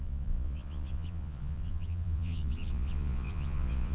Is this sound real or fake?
fake